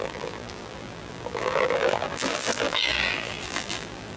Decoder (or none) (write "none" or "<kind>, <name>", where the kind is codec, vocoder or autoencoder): vocoder, BigVGAN v2